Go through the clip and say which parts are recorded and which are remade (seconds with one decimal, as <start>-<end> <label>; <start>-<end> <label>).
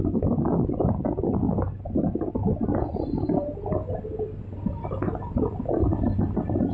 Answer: 0.0-6.7 recorded